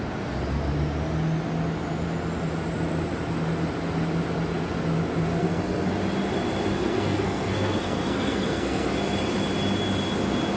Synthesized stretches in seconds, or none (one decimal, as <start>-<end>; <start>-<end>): 5.4-5.9; 6.7-8.9

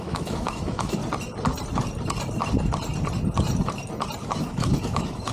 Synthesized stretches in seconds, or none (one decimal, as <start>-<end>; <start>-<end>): 0.0-1.0; 4.2-5.3

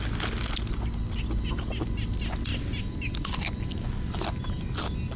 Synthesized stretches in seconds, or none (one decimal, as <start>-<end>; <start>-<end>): none

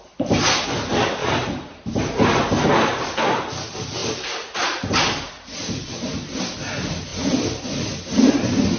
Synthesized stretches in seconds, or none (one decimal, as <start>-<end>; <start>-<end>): 1.2-2.7; 4.0-6.4

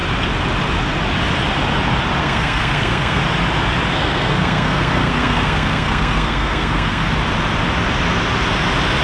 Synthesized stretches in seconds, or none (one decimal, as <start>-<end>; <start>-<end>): 2.2-3.2; 3.9-7.1